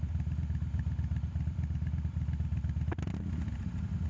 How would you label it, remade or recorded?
recorded